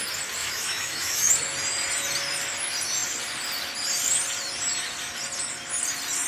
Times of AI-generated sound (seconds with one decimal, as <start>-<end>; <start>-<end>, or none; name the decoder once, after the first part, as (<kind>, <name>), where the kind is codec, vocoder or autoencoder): 0.4-1.3 (autoencoder, DAC-VAE)